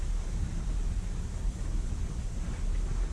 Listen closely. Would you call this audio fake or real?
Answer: real